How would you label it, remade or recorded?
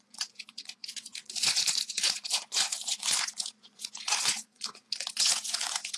remade